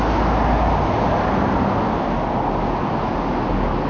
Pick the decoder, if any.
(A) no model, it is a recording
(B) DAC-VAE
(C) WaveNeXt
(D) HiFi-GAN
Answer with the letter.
A